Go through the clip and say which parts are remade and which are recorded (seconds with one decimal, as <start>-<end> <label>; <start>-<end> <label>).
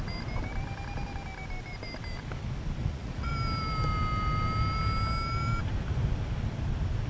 0.0-2.8 recorded; 2.8-3.3 remade; 3.3-7.1 recorded